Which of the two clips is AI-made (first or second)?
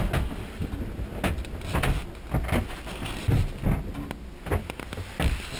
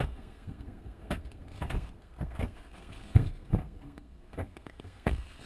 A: second